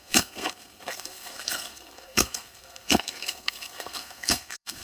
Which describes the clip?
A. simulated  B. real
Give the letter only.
A